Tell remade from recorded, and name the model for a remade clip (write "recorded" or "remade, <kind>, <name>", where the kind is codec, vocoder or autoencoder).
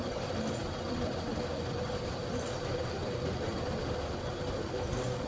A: recorded